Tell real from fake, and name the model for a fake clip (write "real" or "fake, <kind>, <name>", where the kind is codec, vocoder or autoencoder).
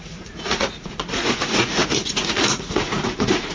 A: fake, vocoder, Vocos